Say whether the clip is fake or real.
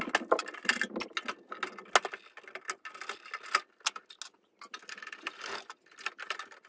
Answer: real